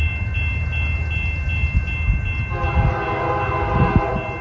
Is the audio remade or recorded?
recorded